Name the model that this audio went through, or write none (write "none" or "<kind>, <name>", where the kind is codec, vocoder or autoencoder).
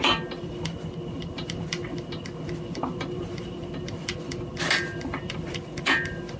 none